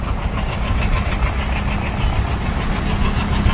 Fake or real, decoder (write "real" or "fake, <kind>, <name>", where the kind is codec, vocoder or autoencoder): real